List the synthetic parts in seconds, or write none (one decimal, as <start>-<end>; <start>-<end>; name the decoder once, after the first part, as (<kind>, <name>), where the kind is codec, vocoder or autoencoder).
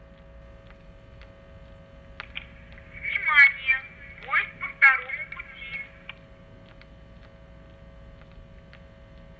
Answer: none